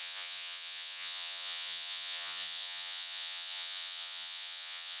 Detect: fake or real fake